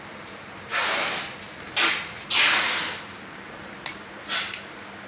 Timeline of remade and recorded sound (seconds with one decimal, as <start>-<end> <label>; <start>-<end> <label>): 0.0-5.1 recorded